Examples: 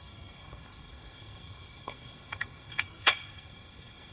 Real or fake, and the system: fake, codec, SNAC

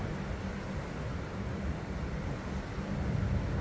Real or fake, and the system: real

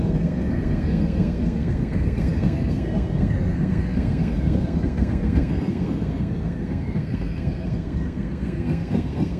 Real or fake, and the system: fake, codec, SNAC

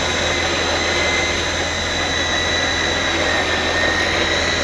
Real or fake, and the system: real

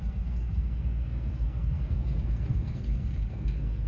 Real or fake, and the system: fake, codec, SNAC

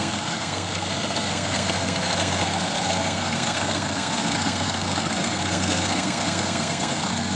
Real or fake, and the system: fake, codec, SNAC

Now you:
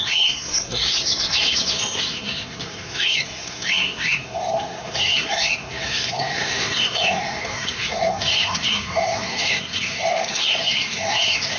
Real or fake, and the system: fake, codec, SNAC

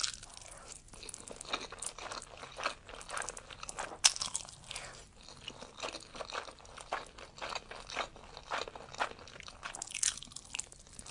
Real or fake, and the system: real